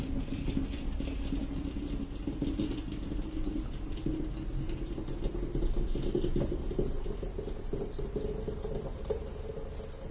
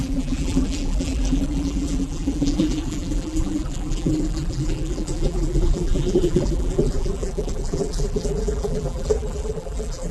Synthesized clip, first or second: second